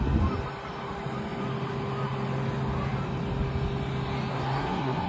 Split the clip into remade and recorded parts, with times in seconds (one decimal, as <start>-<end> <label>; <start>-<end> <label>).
0.0-4.3 recorded; 4.3-5.1 remade